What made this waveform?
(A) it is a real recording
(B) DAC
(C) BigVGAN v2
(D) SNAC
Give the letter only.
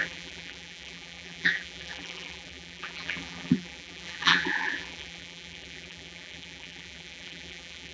C